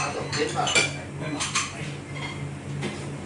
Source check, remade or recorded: recorded